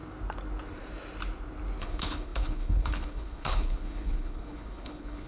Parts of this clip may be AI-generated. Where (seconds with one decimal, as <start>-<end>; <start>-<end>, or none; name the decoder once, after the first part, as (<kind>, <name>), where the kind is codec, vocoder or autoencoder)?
1.8-5.3 (codec, HILCodec)